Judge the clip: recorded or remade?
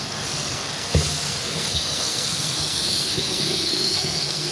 remade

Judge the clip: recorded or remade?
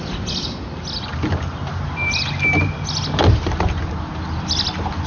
recorded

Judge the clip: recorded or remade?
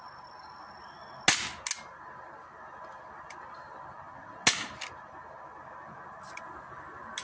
recorded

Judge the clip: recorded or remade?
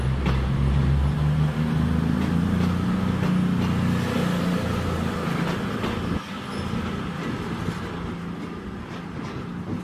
recorded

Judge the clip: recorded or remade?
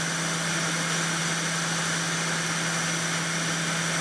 recorded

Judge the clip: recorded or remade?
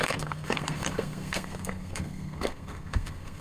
remade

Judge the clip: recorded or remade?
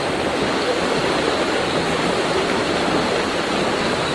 recorded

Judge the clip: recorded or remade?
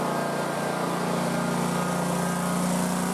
recorded